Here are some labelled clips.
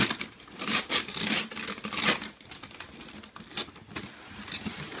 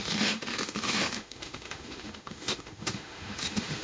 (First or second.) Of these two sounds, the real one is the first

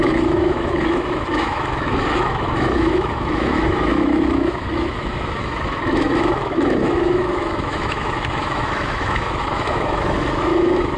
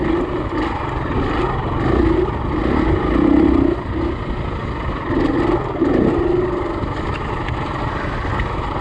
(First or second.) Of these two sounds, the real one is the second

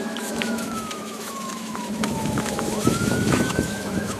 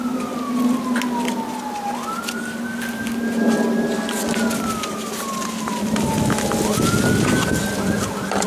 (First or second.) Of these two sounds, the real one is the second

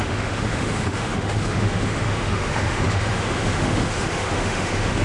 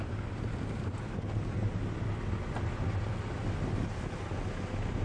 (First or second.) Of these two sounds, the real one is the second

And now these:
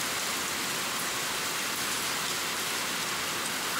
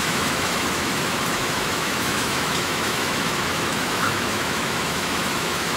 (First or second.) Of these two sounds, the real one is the first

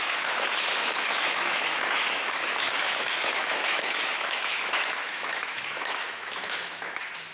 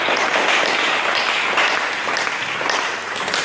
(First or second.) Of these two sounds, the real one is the second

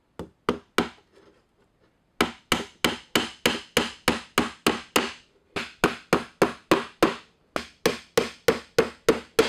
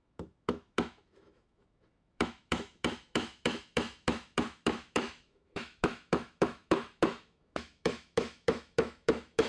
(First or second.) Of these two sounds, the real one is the first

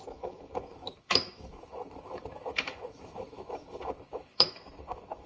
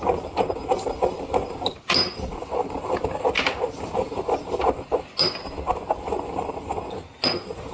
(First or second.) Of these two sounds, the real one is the second